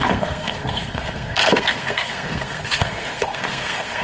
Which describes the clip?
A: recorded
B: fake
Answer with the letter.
B